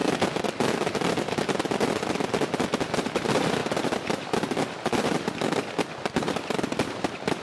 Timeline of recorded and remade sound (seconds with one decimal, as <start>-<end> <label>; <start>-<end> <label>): 0.0-7.4 recorded